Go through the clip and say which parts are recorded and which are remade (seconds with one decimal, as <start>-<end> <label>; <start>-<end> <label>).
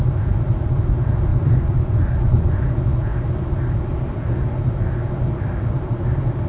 0.0-1.3 recorded; 1.3-2.5 remade; 2.5-6.5 recorded